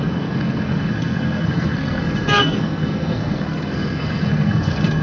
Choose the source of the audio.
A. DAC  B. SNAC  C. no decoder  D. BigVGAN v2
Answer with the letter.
B